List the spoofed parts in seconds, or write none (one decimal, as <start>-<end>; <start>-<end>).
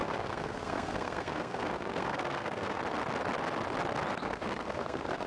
0.0-2.8; 4.2-5.3